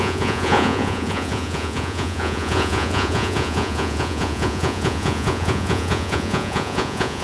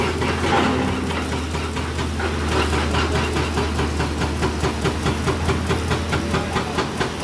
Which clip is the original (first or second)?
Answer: second